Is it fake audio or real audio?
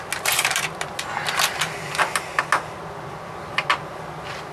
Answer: real